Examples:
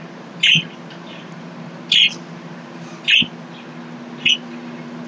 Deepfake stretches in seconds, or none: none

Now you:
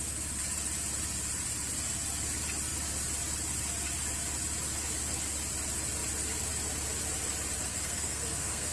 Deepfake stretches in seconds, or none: 7.7-8.7 (codec, SNAC)